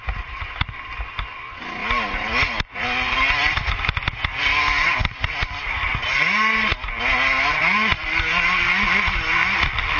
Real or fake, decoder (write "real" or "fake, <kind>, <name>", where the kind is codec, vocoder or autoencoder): real